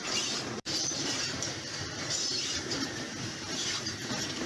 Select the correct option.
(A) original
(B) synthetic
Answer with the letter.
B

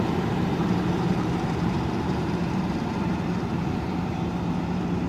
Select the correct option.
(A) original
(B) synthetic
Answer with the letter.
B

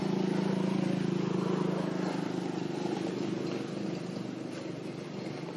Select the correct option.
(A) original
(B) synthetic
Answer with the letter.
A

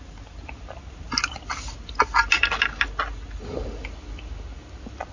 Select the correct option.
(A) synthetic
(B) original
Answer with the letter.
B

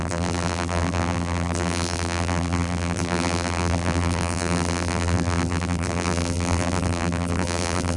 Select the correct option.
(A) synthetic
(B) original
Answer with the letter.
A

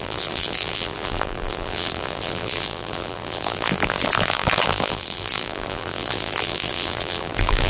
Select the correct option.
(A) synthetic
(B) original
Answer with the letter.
A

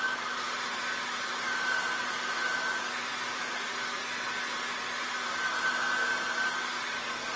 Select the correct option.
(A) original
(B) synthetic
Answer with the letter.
A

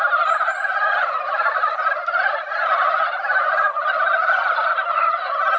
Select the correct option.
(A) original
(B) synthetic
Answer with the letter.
A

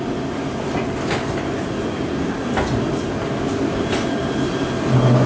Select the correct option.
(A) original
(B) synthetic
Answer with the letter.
A